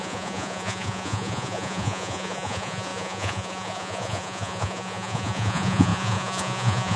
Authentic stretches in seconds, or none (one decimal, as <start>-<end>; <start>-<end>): none